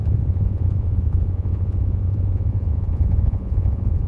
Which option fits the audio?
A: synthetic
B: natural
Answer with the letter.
A